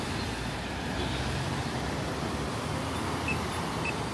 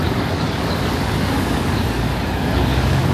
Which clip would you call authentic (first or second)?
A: first